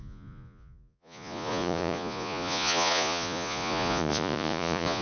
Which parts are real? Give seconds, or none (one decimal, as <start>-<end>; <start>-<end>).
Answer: none